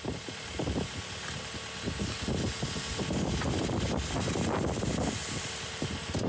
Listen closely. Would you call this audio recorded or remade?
recorded